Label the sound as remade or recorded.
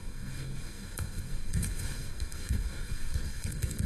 remade